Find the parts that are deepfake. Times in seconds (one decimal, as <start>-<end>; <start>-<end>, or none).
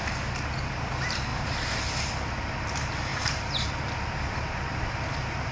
1.3-1.8; 3.1-3.7